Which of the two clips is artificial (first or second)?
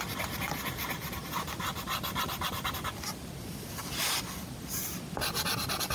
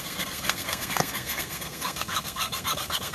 second